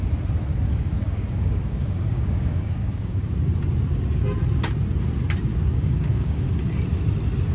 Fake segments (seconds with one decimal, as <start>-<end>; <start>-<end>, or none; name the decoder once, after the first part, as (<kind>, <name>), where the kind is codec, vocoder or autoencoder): 0.7-3.3 (codec, DAC); 5.5-6.6